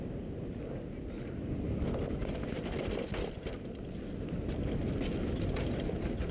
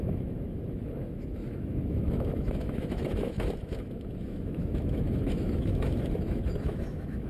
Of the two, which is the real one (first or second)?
first